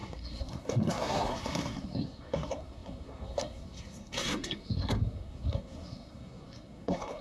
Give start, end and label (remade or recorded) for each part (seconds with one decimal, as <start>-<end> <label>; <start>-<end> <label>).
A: 0.0-7.2 remade

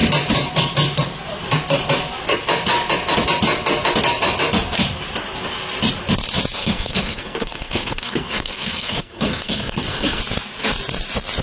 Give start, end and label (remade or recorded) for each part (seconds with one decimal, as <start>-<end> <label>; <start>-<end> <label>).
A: 0.0-6.6 recorded; 6.6-10.2 remade; 10.2-11.4 recorded

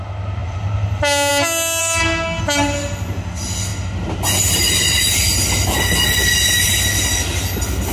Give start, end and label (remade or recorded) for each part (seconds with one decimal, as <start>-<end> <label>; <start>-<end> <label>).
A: 0.0-1.8 recorded; 1.8-2.4 remade; 2.4-7.9 recorded